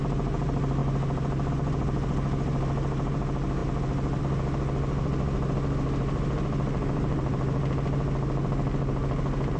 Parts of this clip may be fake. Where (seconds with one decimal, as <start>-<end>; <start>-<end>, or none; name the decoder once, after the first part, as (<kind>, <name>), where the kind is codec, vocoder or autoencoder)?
none